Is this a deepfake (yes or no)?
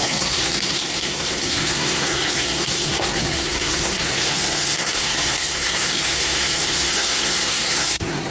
yes